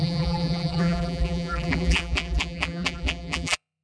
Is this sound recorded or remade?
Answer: remade